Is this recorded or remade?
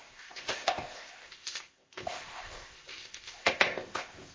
remade